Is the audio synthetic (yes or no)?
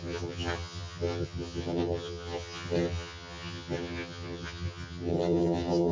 yes